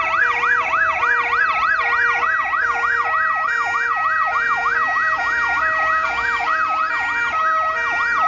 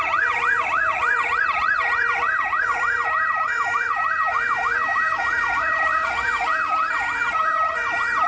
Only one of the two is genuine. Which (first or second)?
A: first